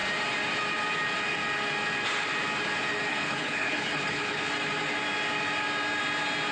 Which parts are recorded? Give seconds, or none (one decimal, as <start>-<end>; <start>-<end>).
0.0-3.1; 4.5-6.5

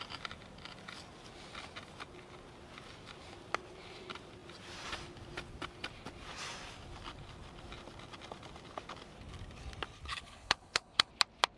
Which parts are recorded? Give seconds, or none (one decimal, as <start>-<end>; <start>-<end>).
0.0-10.1; 11.1-11.6

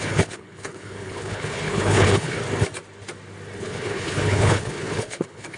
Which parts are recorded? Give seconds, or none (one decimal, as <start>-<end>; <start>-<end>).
2.4-3.6

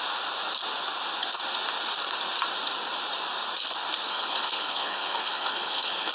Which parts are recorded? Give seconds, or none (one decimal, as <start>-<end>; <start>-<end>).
0.0-4.1